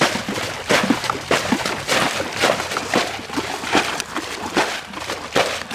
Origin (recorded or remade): recorded